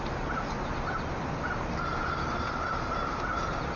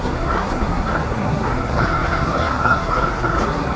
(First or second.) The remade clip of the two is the second